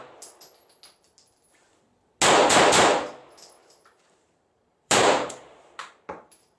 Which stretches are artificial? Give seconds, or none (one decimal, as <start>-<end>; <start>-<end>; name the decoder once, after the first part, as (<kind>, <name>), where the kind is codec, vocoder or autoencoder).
3.6-6.6 (vocoder, BigVGAN v2)